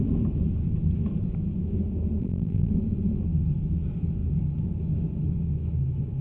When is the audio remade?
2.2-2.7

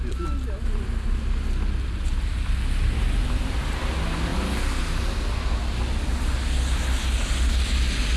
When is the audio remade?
none

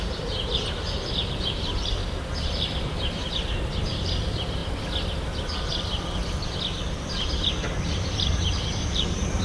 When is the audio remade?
0.0-2.0; 2.5-4.6; 7.6-9.4

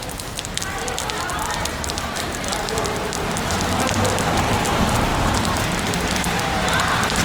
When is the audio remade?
1.7-3.2; 5.1-5.7

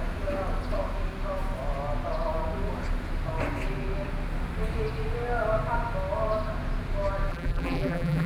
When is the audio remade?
7.3-8.3

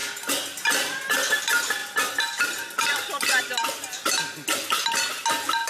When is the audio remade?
none

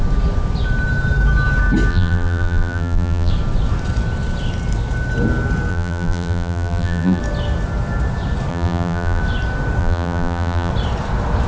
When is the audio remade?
1.9-3.3; 5.7-7.2; 8.5-9.2; 9.8-10.7

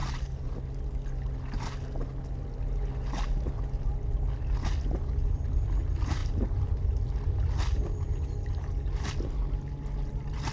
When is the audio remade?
none